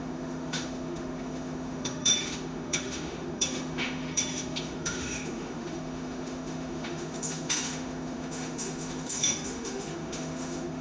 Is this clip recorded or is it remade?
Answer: remade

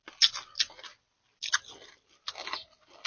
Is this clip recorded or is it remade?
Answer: recorded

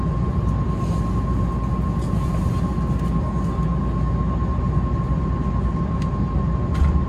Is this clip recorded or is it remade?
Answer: recorded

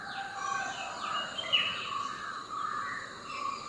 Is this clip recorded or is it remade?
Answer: recorded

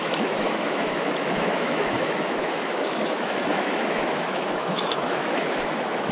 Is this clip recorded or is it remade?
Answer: remade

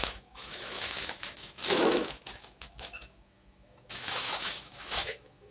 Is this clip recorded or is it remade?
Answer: remade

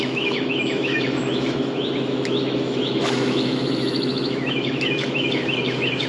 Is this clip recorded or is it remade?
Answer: remade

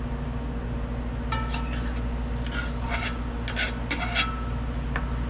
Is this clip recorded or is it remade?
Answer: recorded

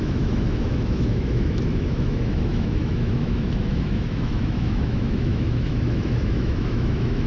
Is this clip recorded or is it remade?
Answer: remade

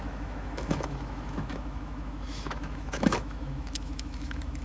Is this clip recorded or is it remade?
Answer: remade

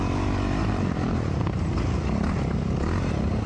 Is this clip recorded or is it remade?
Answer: recorded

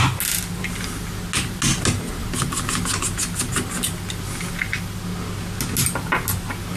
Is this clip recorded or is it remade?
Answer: recorded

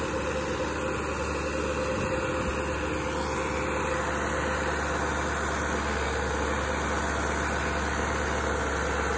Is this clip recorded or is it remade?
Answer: recorded